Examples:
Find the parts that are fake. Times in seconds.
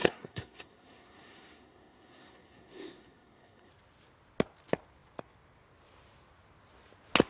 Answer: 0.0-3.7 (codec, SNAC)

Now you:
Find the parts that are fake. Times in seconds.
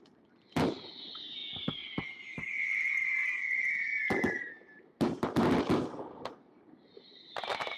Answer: none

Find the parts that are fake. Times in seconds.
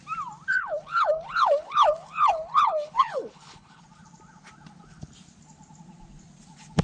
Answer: 0.5-3.8 (codec, HILCodec)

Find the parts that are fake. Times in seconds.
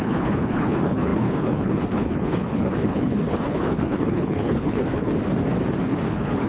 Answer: 0.0-5.1 (codec, HILCodec); 5.8-6.5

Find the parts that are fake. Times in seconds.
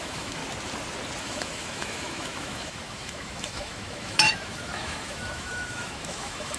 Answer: 0.0-0.4 (autoencoder, DAC-VAE); 1.2-6.6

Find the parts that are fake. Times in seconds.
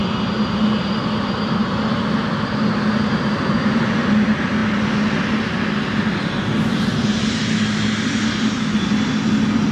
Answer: none